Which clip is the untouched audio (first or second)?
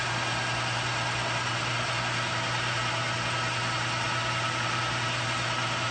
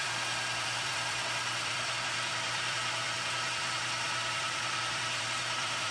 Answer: first